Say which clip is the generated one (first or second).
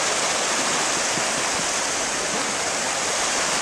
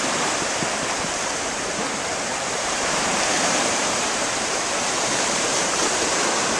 second